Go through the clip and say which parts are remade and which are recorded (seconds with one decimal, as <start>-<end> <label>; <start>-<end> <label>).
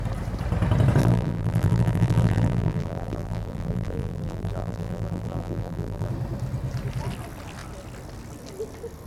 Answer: 0.0-1.0 recorded; 1.0-6.1 remade; 6.1-9.1 recorded